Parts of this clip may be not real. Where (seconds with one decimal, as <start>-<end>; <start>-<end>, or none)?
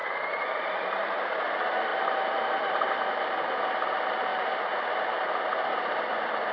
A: 1.9-3.1; 4.3-5.4